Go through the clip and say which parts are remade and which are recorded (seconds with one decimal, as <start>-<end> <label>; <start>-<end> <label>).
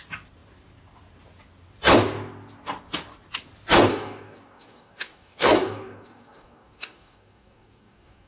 0.0-3.9 recorded; 3.9-8.3 remade